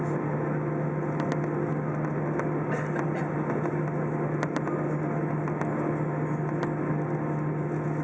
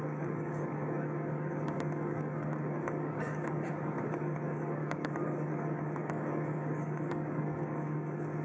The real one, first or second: first